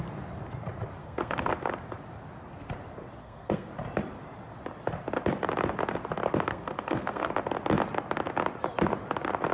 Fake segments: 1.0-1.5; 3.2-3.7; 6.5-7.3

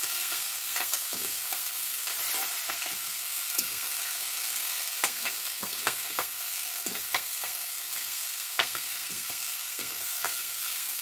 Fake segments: 0.0-2.1; 2.7-11.0

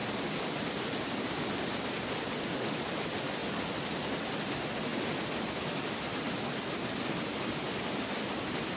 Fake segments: none

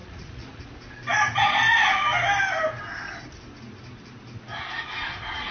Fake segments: 0.0-0.6

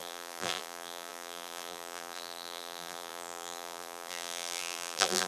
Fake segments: 0.0-5.3

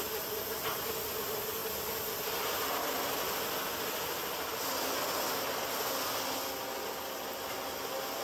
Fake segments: none

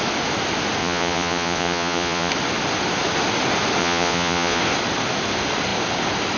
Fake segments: 0.8-2.3; 3.8-4.6